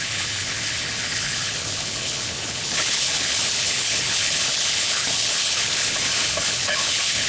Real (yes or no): no